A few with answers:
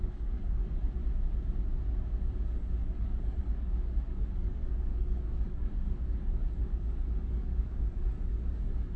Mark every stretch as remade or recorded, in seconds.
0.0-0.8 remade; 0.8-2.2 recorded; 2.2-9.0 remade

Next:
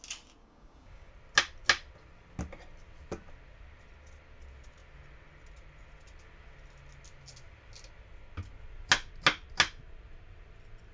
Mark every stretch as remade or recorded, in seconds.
0.0-0.4 recorded; 0.4-1.1 remade; 1.1-10.9 recorded

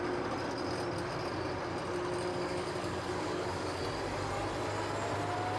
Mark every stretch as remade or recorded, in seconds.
0.0-2.3 recorded; 2.3-3.8 remade; 3.8-5.6 recorded

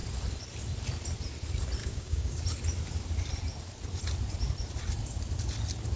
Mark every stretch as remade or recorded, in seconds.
0.0-1.8 recorded; 1.8-2.4 remade; 2.4-6.0 recorded

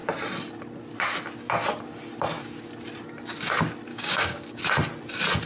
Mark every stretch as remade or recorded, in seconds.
0.0-3.9 recorded; 3.9-4.6 remade; 4.6-5.5 recorded